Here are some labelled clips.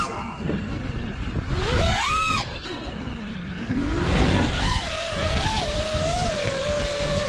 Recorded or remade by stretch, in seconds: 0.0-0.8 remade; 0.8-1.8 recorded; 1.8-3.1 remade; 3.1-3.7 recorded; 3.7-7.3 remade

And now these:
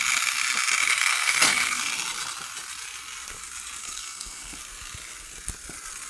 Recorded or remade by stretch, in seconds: 0.0-1.0 recorded; 1.0-1.9 remade; 1.9-3.8 recorded; 3.8-4.6 remade; 4.6-6.1 recorded

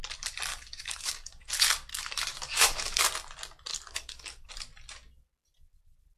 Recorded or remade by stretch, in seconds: 0.0-0.5 recorded; 0.5-1.5 remade; 1.5-1.9 recorded; 1.9-3.0 remade; 3.0-3.7 recorded; 3.7-4.5 remade; 4.5-6.2 recorded

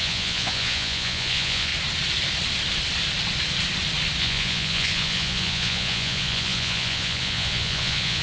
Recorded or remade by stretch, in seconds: 0.0-1.7 remade; 1.7-4.2 recorded; 4.2-8.2 remade

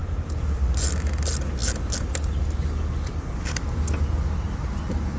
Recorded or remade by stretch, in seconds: 0.0-5.2 recorded